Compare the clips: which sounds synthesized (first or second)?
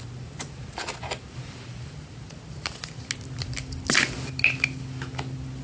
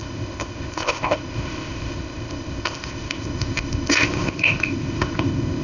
second